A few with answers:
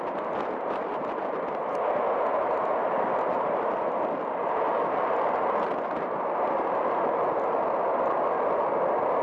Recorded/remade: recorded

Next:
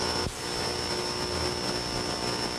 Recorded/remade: recorded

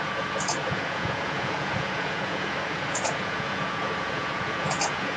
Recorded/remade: remade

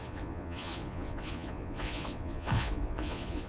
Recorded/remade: remade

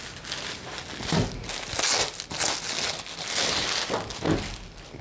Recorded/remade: recorded